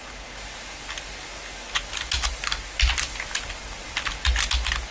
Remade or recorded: recorded